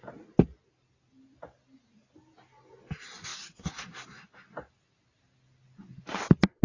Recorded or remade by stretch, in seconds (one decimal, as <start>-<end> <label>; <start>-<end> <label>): 0.0-6.6 recorded